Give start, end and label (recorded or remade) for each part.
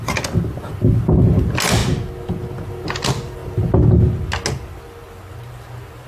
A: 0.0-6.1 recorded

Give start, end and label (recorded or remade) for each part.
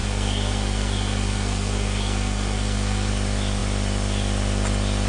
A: 0.0-3.1 remade; 3.1-5.1 recorded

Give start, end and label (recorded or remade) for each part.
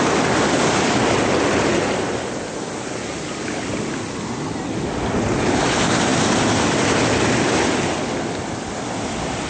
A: 0.0-9.5 recorded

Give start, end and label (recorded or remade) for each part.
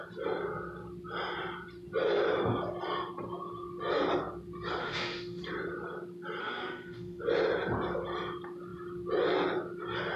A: 0.0-4.8 recorded; 4.8-5.4 remade; 5.4-6.4 recorded; 6.4-7.2 remade; 7.2-10.2 recorded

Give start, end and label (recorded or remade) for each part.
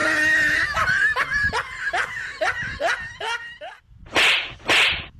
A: 0.0-5.2 recorded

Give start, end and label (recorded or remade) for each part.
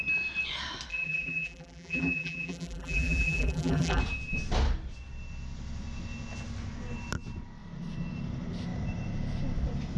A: 0.0-0.9 recorded; 0.9-4.0 remade; 4.0-10.0 recorded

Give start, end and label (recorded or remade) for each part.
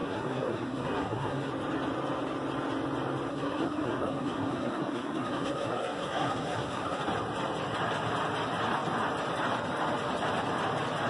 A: 0.0-1.5 remade; 1.5-3.3 recorded; 3.3-7.0 remade; 7.0-11.1 recorded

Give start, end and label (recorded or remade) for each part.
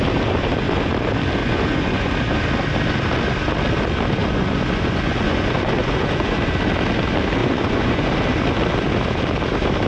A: 0.0-1.4 recorded; 1.4-2.1 remade; 2.1-4.2 recorded; 4.2-6.5 remade; 6.5-7.4 recorded; 7.4-8.1 remade; 8.1-9.9 recorded